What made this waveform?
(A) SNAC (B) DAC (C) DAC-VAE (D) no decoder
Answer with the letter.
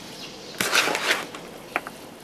D